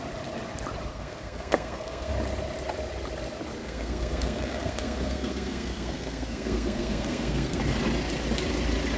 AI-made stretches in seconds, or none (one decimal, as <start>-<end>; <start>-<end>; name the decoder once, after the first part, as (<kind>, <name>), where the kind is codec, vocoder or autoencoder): 0.9-2.1 (codec, SNAC); 3.6-7.6